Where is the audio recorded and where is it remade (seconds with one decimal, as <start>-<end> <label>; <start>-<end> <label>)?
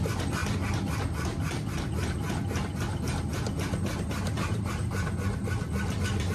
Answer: 0.0-6.3 recorded